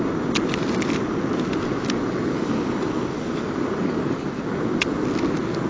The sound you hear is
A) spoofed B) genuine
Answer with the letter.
B